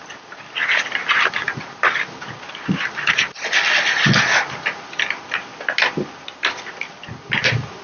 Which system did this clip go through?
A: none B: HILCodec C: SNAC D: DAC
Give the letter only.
A